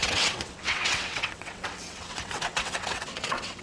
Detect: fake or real fake